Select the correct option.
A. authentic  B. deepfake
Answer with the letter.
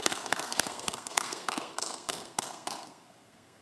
B